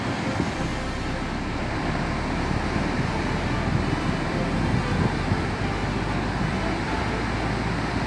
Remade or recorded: recorded